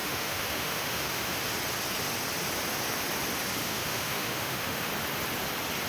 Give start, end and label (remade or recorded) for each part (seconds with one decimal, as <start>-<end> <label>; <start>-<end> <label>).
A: 0.0-1.4 remade; 1.4-3.6 recorded; 3.6-4.9 remade; 4.9-5.9 recorded